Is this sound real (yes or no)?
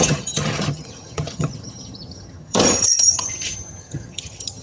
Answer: no